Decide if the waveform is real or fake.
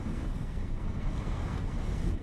fake